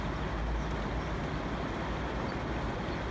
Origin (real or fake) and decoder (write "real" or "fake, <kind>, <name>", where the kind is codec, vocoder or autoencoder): real